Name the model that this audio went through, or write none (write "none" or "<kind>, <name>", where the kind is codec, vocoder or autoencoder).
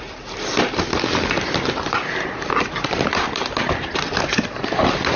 none